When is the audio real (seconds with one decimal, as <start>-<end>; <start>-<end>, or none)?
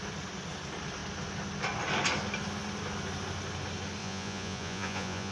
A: 0.0-4.0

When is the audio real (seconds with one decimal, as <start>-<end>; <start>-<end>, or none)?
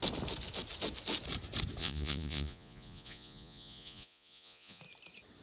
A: 0.0-1.8; 4.8-5.4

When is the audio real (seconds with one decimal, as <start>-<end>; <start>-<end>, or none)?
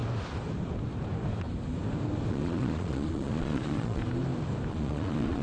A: 0.0-2.3; 4.0-4.7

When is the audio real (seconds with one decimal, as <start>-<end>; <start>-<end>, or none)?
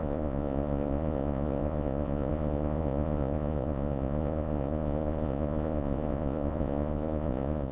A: none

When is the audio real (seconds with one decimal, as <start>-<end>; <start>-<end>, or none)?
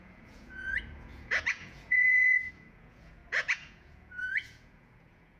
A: none